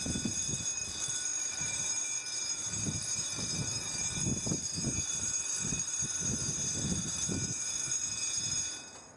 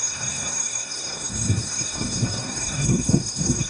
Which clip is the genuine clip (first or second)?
first